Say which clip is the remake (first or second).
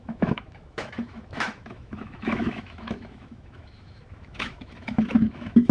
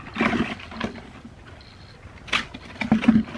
first